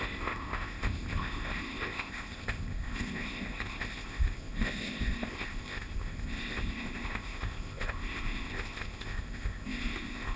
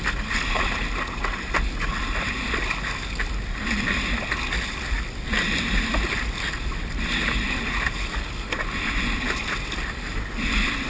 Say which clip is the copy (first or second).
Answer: first